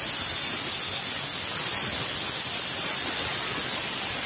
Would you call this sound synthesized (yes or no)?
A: no